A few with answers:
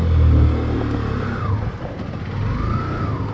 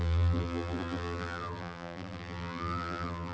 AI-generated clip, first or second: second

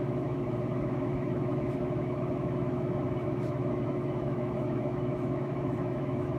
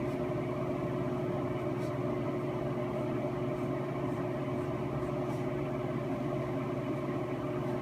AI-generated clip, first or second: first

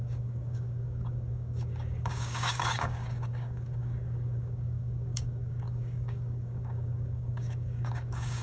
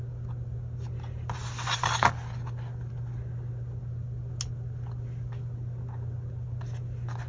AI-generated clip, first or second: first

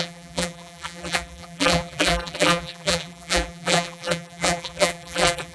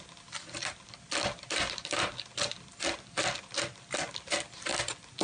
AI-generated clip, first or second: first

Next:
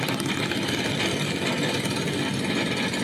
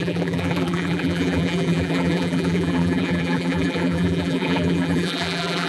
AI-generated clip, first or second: second